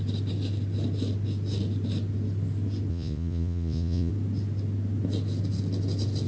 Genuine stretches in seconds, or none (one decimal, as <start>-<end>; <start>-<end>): 0.0-2.9; 4.1-6.3

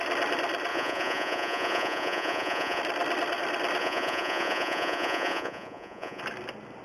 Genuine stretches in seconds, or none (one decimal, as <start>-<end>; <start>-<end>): 0.0-0.7; 2.8-3.8; 6.2-6.8

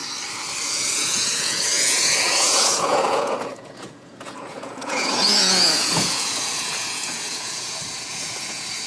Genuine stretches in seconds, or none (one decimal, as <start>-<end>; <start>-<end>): 0.0-0.7